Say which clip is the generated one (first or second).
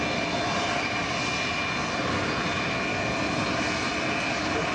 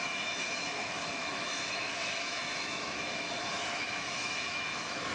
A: second